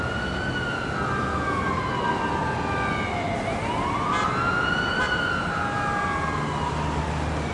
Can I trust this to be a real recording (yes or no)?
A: yes